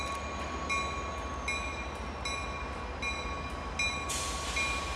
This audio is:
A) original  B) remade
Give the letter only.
A